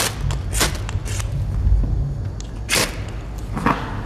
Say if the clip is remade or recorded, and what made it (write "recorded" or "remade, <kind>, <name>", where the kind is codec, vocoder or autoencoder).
recorded